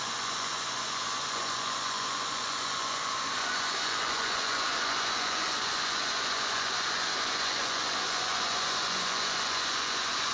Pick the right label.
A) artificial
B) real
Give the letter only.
A